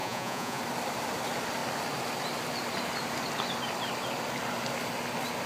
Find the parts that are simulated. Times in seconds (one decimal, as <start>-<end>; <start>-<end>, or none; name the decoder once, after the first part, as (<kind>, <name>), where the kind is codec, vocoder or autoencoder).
0.0-0.6 (vocoder, Vocos)

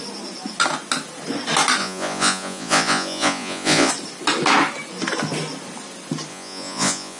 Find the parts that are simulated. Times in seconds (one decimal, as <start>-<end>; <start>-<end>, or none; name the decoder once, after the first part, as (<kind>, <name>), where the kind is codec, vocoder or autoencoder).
1.8-3.9 (vocoder, Vocos); 6.3-7.2

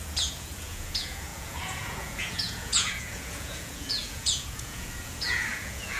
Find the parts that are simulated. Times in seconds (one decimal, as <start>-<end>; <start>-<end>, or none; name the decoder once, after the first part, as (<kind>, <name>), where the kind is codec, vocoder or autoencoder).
0.0-6.0 (vocoder, Vocos)

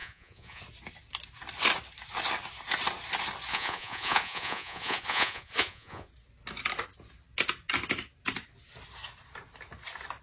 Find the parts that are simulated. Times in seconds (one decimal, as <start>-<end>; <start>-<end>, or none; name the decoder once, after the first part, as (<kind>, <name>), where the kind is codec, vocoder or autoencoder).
0.0-0.6 (vocoder, Vocos); 3.5-6.1